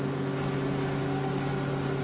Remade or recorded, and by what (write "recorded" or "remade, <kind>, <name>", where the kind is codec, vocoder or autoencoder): recorded